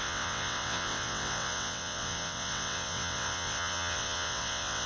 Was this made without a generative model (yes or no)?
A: no